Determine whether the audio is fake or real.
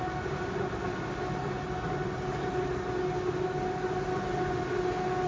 real